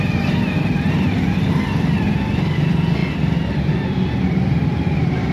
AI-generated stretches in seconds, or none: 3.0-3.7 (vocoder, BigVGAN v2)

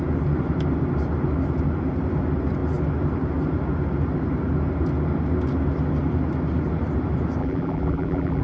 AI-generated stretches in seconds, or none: 7.4-8.4 (vocoder, BigVGAN v2)

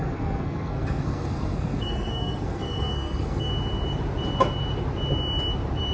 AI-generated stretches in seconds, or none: 0.0-3.5 (codec, SNAC)

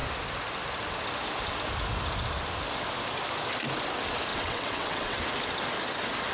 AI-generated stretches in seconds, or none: 4.3-5.2 (vocoder, WaveNeXt)

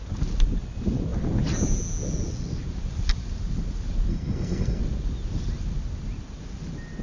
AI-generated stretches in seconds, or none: 4.1-4.8 (codec, SNAC)

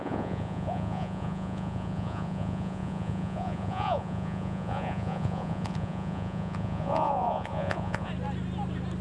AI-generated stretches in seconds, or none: 0.0-8.1 (vocoder, Vocos)